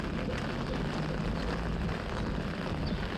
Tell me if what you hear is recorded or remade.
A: recorded